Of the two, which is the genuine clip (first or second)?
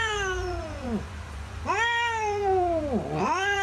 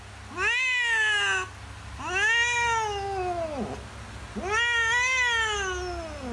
second